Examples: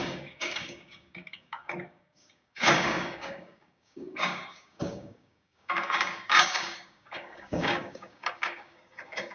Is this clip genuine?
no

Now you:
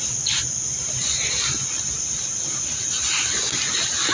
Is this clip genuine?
yes